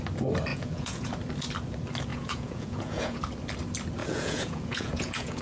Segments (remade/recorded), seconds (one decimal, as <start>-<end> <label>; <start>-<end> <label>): 0.0-0.5 recorded; 0.5-1.1 remade; 1.1-2.1 recorded; 2.1-3.2 remade; 3.2-4.0 recorded; 4.0-5.4 remade